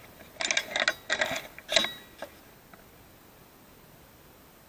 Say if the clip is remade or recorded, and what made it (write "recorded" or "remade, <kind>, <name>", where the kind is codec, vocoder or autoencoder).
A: recorded